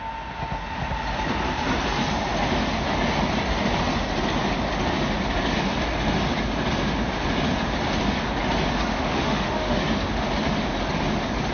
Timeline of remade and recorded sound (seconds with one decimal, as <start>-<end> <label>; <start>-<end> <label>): 0.0-8.9 recorded; 8.9-9.8 remade; 9.8-11.5 recorded